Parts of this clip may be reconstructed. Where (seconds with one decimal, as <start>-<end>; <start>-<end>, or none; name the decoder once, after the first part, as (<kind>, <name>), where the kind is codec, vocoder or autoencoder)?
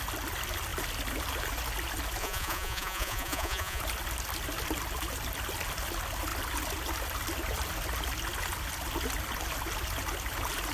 2.2-3.8 (vocoder, Vocos)